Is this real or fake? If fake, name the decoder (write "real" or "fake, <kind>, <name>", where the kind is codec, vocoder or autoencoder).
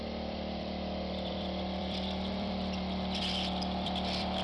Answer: fake, vocoder, BigVGAN v2